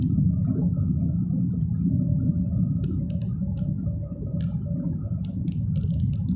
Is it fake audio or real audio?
real